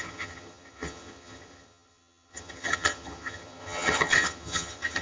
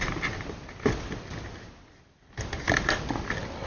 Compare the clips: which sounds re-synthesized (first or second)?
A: first